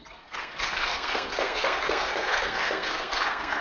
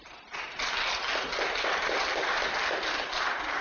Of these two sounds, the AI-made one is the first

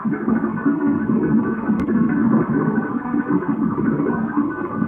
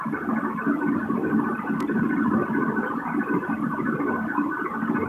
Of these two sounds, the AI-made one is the first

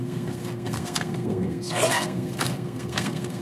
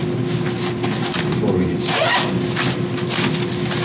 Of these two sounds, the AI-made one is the first